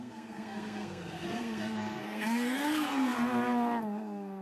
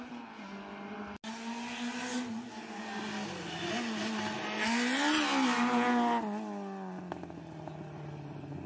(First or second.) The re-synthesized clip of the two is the first